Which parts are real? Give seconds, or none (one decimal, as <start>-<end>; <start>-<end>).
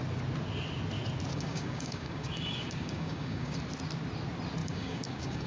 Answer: 0.0-1.3; 3.6-4.6